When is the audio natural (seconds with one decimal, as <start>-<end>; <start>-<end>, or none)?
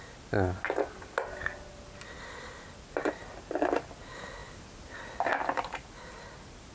0.0-3.2; 3.8-6.7